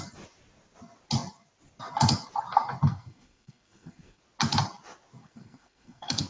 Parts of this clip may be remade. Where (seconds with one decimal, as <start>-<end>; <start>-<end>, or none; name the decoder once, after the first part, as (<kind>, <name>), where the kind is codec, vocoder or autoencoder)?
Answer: 2.9-4.2 (codec, SNAC); 5.2-6.3